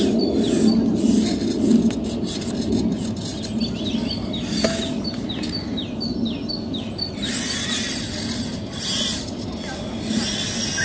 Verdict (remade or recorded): recorded